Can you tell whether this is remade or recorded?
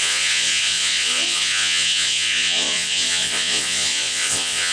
remade